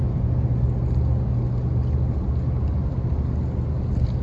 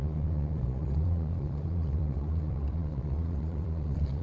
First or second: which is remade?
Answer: second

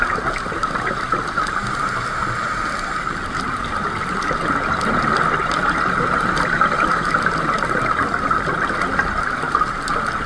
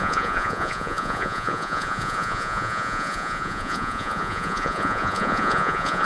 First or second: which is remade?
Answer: second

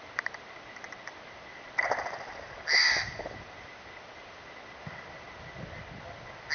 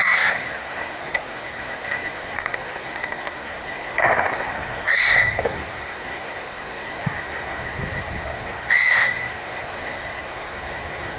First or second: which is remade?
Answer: second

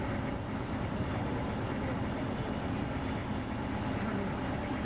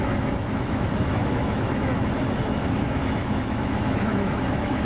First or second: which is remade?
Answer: second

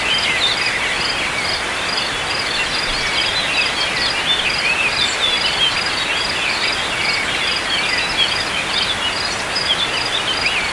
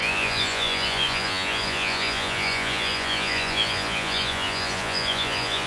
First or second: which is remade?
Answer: second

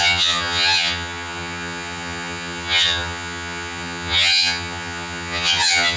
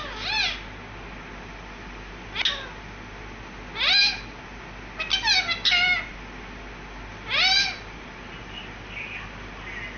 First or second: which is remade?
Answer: first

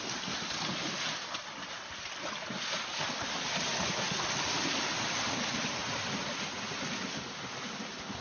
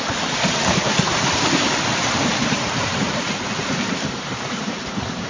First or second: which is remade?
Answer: second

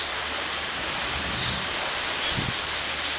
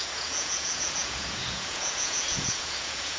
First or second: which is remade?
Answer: second